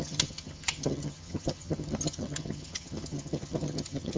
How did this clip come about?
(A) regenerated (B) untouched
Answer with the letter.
A